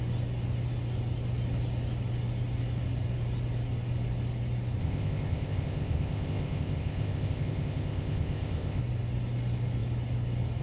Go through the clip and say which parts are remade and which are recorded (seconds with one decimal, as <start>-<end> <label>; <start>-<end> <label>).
0.0-4.8 recorded; 4.8-8.8 remade; 8.8-10.6 recorded